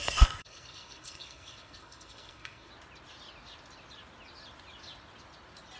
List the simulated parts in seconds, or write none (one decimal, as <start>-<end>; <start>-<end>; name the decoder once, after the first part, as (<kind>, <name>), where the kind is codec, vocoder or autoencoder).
0.0-2.7 (codec, SNAC)